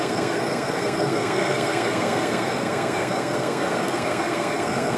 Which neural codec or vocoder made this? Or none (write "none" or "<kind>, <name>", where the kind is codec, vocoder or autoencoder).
codec, SNAC